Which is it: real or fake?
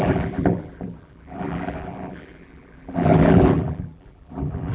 fake